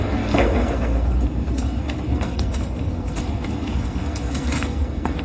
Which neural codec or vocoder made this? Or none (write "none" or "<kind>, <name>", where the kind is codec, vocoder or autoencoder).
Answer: codec, SNAC